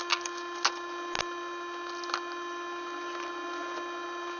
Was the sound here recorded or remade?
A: recorded